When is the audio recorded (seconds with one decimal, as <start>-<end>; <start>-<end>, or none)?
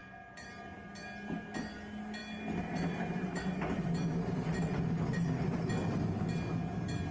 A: 0.0-7.1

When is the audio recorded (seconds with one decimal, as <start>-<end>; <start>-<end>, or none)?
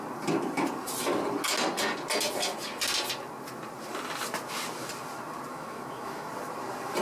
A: 0.0-5.5; 6.3-7.0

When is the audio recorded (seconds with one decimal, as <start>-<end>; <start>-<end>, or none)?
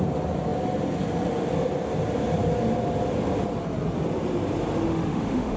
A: 0.0-4.9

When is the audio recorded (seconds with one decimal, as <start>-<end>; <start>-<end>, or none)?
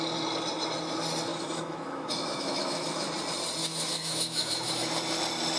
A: 0.0-1.3; 3.1-3.6; 4.7-5.6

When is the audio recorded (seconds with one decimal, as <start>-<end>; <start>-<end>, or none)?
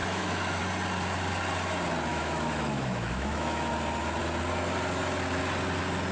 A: 0.6-2.1; 3.7-6.1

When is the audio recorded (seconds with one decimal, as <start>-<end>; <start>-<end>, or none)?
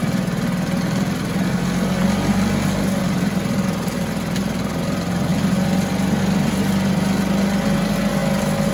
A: 0.0-8.7